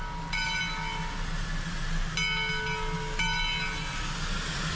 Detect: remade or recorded recorded